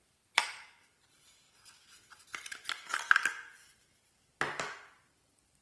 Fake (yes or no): no